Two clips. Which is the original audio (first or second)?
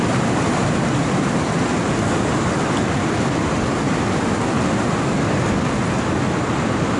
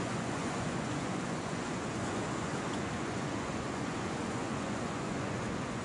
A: first